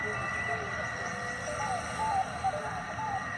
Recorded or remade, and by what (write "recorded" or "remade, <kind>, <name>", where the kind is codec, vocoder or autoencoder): recorded